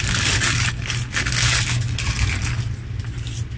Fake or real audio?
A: real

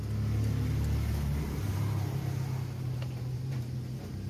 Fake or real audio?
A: real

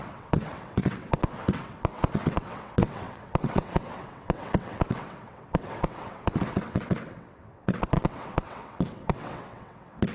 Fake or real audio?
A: fake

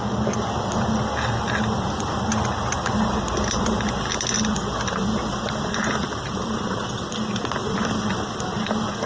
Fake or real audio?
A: real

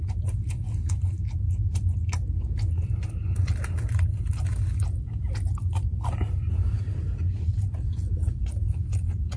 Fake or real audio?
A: real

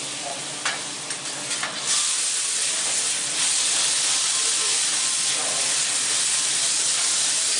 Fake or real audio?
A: real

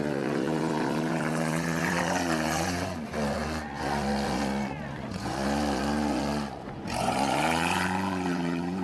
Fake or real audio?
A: fake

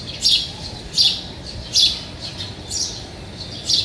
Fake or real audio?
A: real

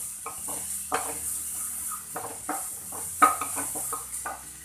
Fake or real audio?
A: real